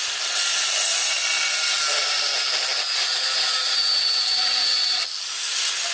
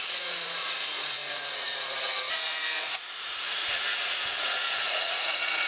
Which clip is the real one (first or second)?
first